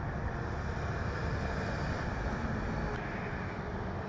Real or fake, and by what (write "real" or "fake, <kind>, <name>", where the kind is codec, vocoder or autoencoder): real